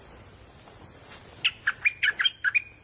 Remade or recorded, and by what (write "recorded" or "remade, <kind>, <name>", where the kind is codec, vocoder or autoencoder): recorded